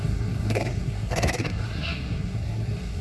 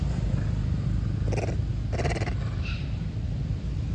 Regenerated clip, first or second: first